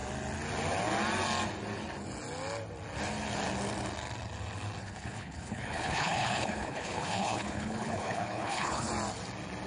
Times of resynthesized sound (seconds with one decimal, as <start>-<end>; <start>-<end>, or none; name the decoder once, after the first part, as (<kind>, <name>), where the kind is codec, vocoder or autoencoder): 4.8-8.9 (codec, HILCodec)